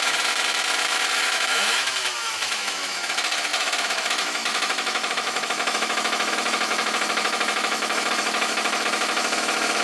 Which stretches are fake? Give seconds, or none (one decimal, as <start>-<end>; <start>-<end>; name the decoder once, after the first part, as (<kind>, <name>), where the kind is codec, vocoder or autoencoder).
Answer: 0.0-9.8 (autoencoder, DAC-VAE)